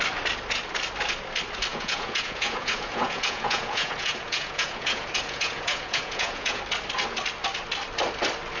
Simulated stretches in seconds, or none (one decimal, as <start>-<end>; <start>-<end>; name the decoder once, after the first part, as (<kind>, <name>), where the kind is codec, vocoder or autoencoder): 1.7-6.6 (vocoder, Vocos)